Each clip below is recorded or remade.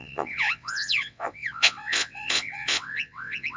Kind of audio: remade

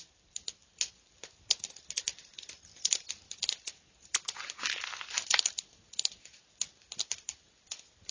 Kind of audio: recorded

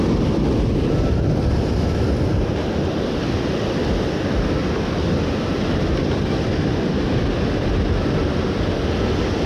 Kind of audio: recorded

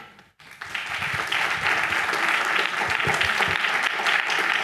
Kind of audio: recorded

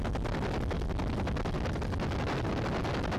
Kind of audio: recorded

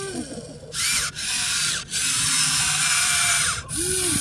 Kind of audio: recorded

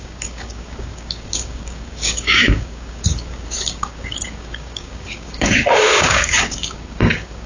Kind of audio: remade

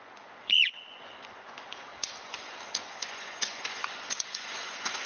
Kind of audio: remade